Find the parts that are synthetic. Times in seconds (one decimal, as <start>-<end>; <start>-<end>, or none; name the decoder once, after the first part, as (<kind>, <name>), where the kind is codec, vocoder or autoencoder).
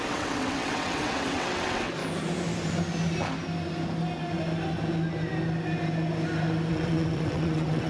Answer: 0.0-2.0 (vocoder, WaveNeXt); 6.7-7.9